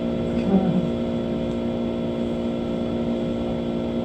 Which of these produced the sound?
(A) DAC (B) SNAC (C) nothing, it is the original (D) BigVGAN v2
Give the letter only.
C